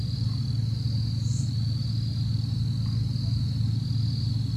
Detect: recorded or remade recorded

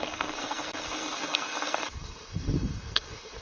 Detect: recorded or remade remade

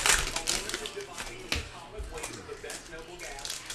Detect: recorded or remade recorded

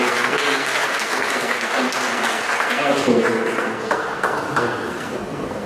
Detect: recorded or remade remade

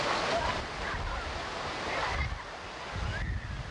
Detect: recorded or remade recorded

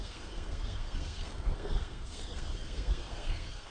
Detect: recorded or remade remade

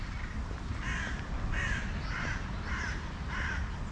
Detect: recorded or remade recorded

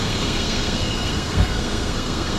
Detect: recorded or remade remade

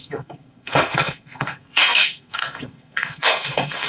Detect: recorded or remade remade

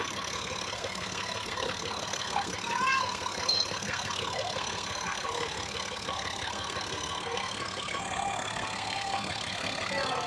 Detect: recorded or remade remade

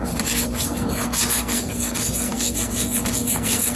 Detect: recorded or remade remade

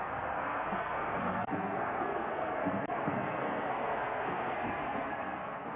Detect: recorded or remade remade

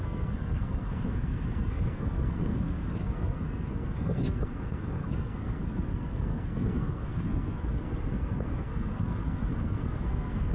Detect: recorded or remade remade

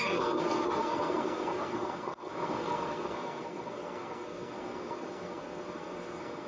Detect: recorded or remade remade